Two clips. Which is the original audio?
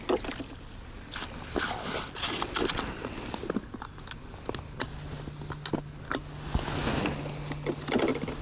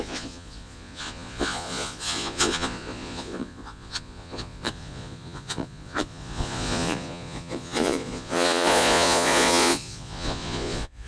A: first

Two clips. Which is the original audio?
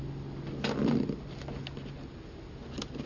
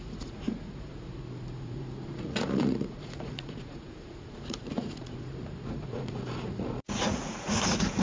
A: first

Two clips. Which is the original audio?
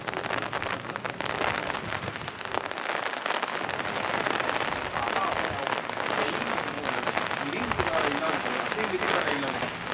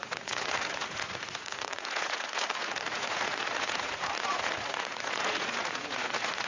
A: first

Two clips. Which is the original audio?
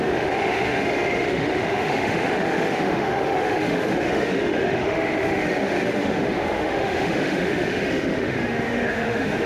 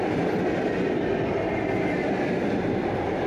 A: second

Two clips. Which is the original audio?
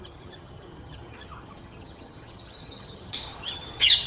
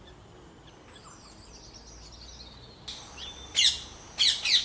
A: second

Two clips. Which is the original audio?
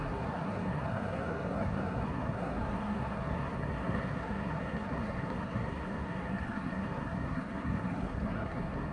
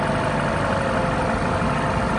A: second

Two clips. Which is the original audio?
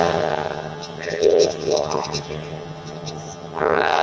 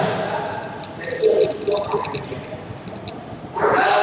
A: second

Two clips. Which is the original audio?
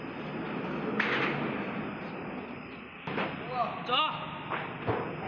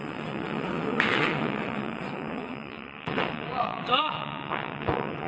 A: first